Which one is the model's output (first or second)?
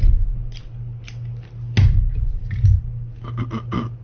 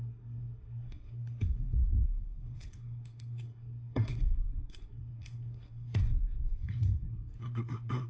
second